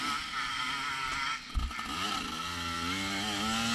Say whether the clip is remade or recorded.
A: recorded